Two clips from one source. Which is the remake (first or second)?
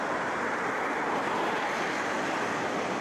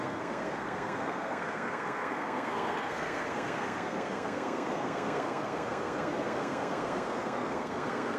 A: second